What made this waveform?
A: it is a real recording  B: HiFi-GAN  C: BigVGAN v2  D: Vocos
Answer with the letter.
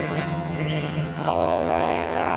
B